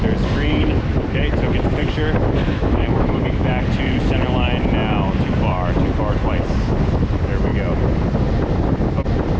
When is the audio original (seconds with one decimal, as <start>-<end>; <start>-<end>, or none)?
0.0-2.4; 3.6-9.4